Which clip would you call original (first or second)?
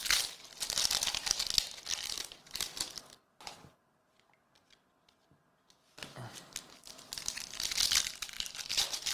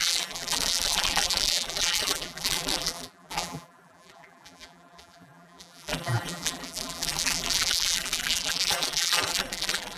first